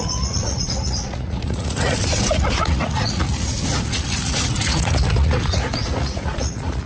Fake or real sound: fake